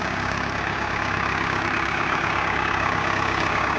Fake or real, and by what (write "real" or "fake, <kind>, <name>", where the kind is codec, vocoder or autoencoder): fake, codec, DAC